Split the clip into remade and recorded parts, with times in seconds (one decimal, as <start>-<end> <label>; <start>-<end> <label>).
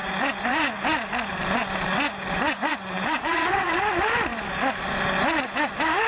0.0-2.7 recorded; 2.7-3.8 remade; 3.8-6.1 recorded